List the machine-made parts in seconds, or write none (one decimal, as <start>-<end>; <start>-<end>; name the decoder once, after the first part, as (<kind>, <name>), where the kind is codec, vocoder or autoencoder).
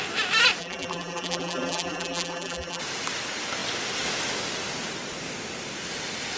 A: 0.6-2.8 (vocoder, BigVGAN v2)